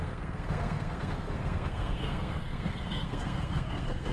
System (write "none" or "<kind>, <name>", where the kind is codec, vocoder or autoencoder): codec, SNAC